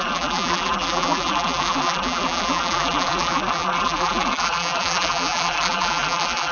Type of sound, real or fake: fake